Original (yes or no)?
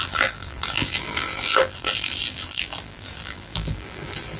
no